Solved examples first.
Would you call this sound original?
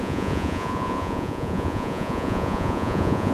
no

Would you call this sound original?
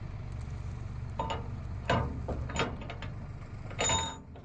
yes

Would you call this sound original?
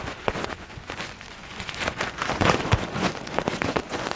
no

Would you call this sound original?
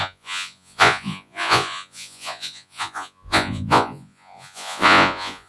no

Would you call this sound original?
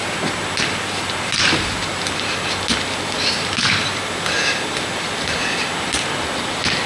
yes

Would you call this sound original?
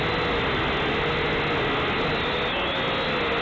yes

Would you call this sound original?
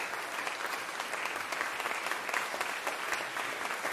yes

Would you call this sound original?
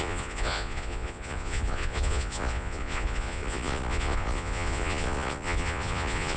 no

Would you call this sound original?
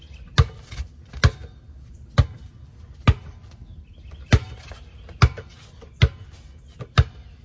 yes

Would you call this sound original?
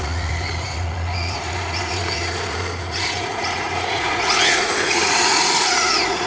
no